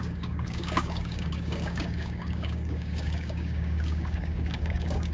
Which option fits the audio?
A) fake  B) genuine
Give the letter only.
A